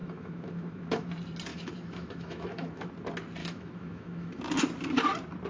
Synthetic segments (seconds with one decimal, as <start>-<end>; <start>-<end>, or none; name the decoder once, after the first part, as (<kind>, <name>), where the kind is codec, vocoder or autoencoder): 0.0-1.1 (autoencoder, DAC-VAE); 1.5-2.9; 3.4-4.4